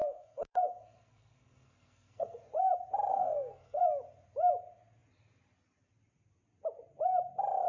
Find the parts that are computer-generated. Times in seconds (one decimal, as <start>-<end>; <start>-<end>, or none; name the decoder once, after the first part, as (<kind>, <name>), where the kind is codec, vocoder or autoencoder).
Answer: 0.0-2.4 (codec, SNAC); 3.1-3.8